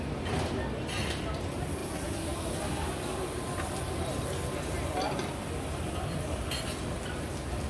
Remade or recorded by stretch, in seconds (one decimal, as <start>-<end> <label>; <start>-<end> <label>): 0.0-7.7 recorded